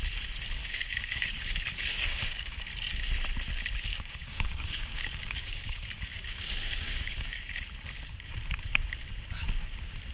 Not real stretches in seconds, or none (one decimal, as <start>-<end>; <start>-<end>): 0.6-2.6; 3.9-7.4